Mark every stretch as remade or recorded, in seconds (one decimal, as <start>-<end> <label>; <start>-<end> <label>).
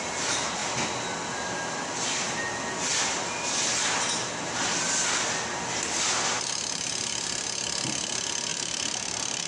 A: 0.0-8.5 recorded; 8.5-9.5 remade